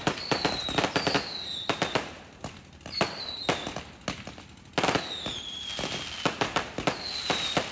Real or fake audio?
real